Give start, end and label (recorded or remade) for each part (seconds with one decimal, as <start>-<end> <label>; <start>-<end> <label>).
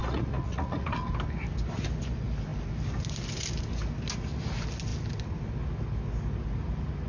0.0-1.1 remade; 1.1-7.1 recorded